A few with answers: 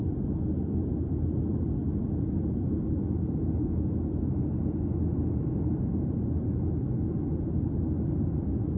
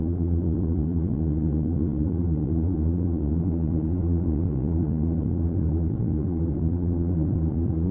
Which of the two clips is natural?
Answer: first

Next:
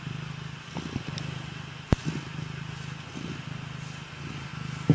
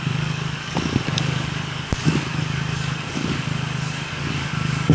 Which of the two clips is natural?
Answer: first